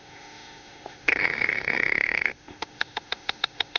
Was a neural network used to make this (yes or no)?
yes